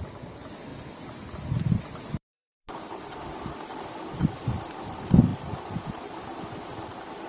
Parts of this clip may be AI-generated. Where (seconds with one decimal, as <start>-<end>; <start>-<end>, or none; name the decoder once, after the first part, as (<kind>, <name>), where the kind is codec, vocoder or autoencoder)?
2.8-3.3 (vocoder, BigVGAN v2)